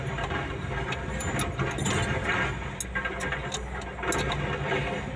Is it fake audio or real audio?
real